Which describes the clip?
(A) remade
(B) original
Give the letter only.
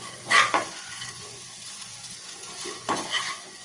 A